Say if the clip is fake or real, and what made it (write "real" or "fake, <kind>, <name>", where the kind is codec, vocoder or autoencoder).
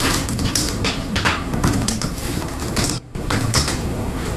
fake, codec, SNAC